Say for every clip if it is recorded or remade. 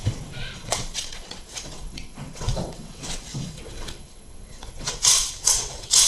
remade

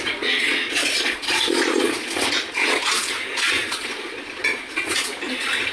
remade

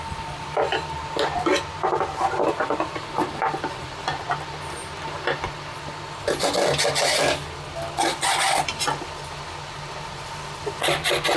recorded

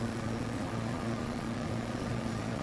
remade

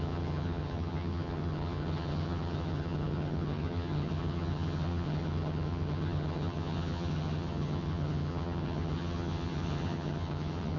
remade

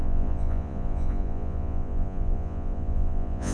remade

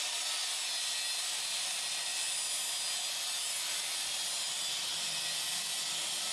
recorded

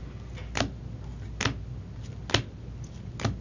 recorded